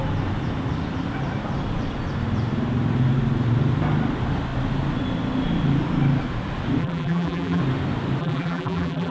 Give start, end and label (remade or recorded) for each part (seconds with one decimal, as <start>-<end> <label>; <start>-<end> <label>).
0.0-6.8 recorded; 6.8-7.6 remade; 7.6-8.2 recorded; 8.2-9.1 remade